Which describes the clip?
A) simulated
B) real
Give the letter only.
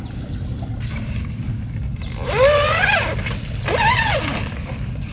B